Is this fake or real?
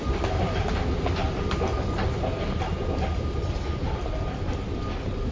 real